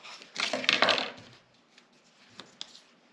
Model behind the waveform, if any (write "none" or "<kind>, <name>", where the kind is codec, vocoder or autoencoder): none